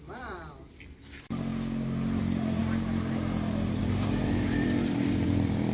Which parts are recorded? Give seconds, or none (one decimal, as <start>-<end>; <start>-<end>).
1.5-2.2; 2.6-3.8